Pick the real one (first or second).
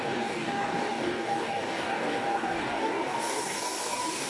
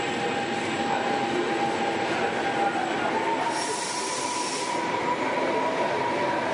second